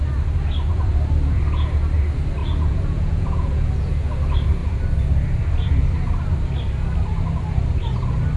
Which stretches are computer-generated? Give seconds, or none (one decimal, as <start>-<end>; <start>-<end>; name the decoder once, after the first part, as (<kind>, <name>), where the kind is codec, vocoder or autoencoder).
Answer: 2.4-3.9 (vocoder, Vocos)